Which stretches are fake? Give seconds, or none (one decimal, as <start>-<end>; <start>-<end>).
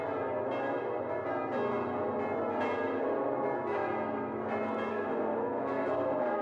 4.9-6.4